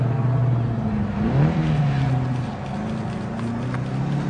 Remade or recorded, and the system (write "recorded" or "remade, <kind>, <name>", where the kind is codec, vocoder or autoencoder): recorded